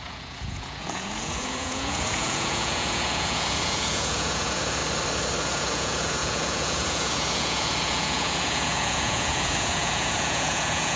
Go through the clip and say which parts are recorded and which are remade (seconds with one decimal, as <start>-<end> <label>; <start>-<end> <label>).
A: 0.0-4.8 remade; 4.8-5.4 recorded; 5.4-11.0 remade